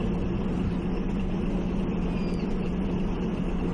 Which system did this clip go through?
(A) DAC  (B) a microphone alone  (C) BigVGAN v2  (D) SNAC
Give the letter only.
B